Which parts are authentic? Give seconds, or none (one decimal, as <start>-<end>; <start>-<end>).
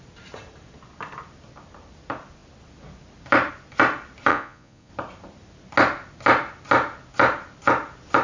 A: 0.0-4.3; 4.9-8.2